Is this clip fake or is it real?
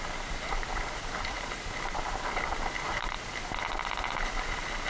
real